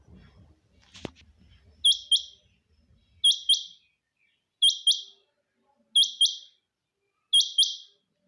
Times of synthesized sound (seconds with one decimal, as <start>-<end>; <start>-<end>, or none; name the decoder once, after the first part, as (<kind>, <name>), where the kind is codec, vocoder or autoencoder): none